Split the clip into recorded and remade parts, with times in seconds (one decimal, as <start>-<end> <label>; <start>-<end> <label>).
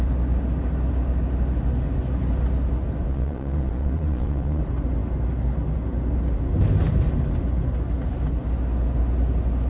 0.0-3.1 recorded; 3.1-4.6 remade; 4.6-9.7 recorded